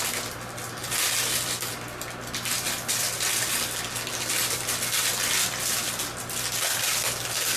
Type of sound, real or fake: real